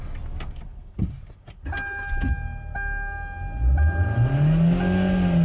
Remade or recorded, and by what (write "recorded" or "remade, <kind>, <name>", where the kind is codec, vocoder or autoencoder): recorded